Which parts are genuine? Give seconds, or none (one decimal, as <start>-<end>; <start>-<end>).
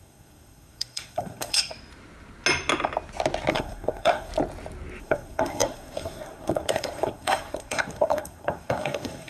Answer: 1.7-3.5; 4.3-5.0